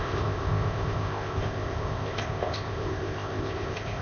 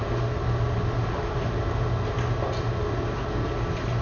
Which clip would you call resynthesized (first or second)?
first